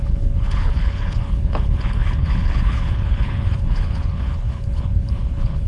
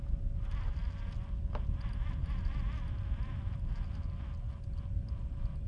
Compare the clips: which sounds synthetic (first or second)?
first